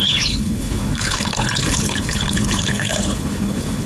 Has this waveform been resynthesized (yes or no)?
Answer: yes